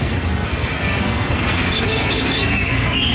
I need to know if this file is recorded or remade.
remade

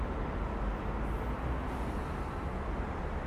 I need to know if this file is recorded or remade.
recorded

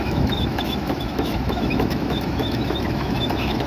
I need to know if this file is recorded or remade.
remade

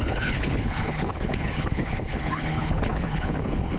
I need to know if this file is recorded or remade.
remade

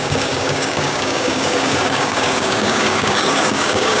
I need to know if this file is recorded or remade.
remade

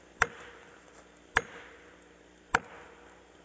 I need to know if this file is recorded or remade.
recorded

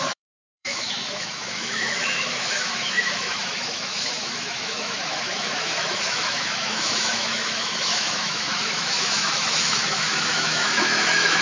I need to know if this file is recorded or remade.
remade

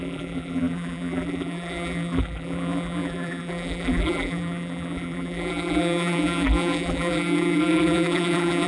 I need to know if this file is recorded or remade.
remade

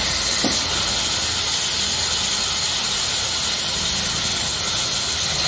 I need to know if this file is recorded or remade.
recorded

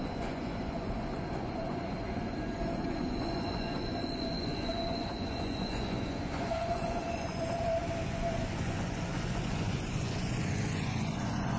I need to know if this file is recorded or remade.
remade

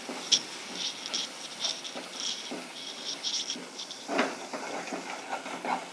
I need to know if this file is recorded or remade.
recorded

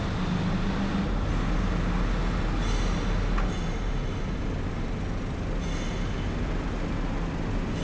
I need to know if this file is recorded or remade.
recorded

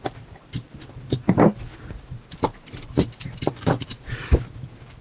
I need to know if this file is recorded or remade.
recorded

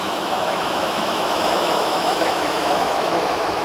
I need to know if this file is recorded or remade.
remade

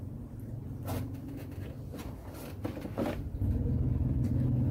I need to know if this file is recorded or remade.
recorded